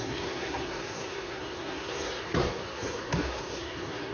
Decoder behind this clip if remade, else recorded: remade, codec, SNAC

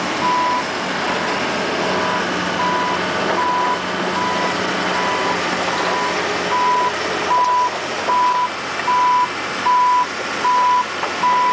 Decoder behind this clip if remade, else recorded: recorded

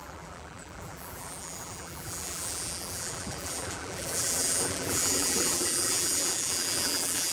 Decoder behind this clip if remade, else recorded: remade, vocoder, BigVGAN v2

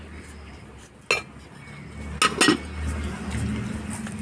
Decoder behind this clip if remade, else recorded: recorded